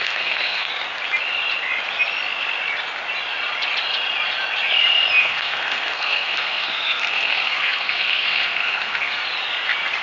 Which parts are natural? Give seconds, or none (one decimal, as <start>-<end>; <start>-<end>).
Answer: 0.7-5.2; 9.2-10.0